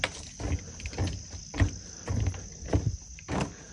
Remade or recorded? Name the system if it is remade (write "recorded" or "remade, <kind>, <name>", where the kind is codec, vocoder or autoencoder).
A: recorded